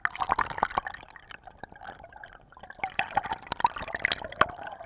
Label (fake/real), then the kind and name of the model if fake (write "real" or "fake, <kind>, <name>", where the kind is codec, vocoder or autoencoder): real